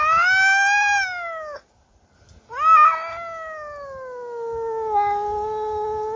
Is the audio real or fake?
real